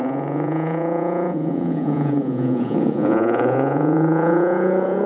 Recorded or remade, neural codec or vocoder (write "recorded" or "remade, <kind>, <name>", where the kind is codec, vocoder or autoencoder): remade, vocoder, Vocos